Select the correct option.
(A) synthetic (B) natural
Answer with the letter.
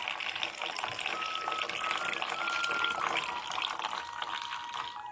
B